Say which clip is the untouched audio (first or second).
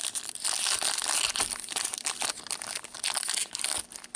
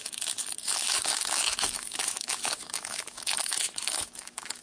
first